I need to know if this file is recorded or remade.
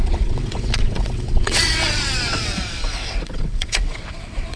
remade